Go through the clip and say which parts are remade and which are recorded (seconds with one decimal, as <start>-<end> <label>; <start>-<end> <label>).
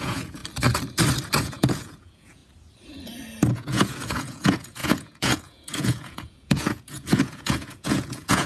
0.0-0.4 remade; 0.4-1.4 recorded; 1.4-2.4 remade; 2.4-3.5 recorded; 3.5-8.5 remade